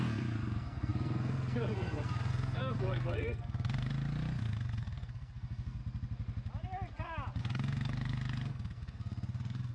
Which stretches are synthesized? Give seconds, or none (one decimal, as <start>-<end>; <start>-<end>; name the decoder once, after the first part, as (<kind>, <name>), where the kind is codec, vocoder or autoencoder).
0.0-3.9 (codec, SNAC); 4.4-5.8; 7.4-9.7